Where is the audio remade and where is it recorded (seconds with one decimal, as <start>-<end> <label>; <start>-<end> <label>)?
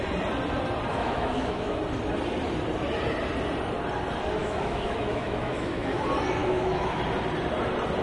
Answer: 0.0-0.9 recorded; 0.9-1.8 remade; 1.8-4.4 recorded; 4.4-6.0 remade; 6.0-6.4 recorded; 6.4-7.0 remade; 7.0-8.0 recorded